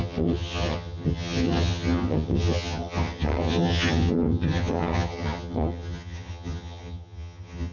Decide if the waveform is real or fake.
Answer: fake